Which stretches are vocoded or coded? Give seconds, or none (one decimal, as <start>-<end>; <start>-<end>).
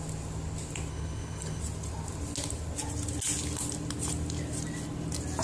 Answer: 0.9-1.6